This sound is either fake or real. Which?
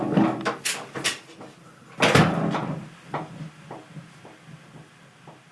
real